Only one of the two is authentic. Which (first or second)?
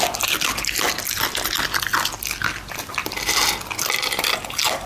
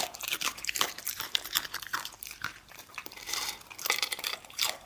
first